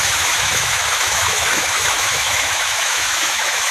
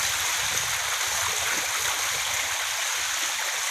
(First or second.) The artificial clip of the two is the first